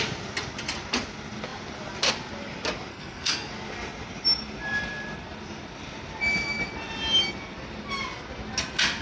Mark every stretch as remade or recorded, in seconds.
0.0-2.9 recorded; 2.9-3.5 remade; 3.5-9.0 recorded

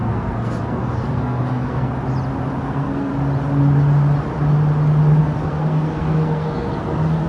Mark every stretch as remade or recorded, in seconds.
0.0-1.9 remade; 1.9-2.6 recorded; 2.6-3.1 remade; 3.1-5.2 recorded; 5.2-7.3 remade

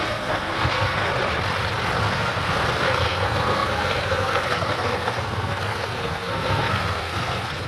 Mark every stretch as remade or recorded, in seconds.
0.0-1.1 remade; 1.1-2.0 recorded; 2.0-7.7 remade

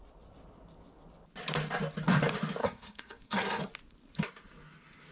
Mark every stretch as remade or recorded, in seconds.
0.0-2.6 recorded; 2.6-3.6 remade; 3.6-5.1 recorded

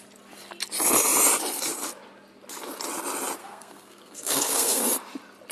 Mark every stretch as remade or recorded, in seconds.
0.0-3.4 recorded; 3.4-4.8 remade; 4.8-5.5 recorded

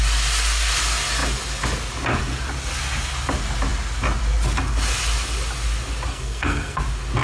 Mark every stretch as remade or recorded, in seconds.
0.0-6.1 recorded; 6.1-6.8 remade; 6.8-7.2 recorded

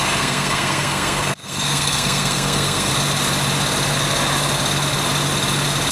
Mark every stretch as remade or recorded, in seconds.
0.0-2.9 remade; 2.9-5.9 recorded

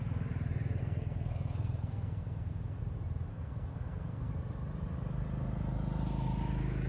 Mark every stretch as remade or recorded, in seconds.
0.0-0.8 recorded; 0.8-2.8 remade; 2.8-3.3 recorded; 3.3-4.3 remade; 4.3-6.9 recorded